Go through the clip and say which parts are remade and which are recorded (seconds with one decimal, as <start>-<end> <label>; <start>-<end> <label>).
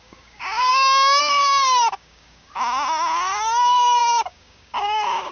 0.0-0.7 remade; 0.7-1.2 recorded; 1.2-5.3 remade